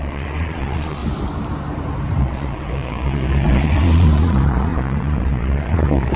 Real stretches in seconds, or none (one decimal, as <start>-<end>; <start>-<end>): 1.0-2.2